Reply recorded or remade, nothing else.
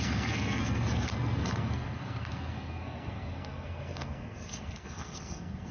remade